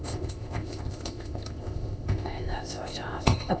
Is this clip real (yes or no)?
no